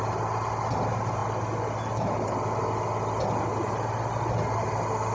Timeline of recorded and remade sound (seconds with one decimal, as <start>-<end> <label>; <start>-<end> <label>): 0.0-5.1 recorded